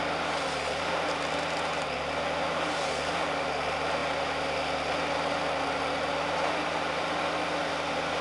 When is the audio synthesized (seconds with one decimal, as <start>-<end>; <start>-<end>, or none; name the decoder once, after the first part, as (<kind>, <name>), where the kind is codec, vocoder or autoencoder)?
none